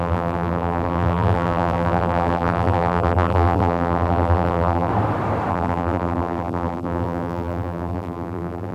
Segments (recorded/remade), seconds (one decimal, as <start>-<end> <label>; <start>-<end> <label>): 0.0-4.9 remade; 4.9-5.5 recorded; 5.5-8.7 remade